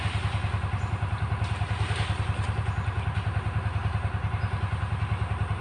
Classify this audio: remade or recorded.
recorded